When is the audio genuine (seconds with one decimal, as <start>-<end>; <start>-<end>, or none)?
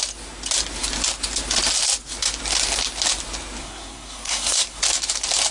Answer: 0.0-3.6; 4.8-5.5